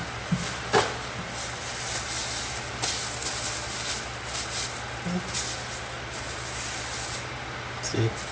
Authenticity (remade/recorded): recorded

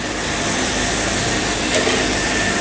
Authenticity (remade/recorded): recorded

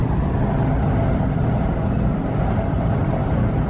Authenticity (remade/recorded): recorded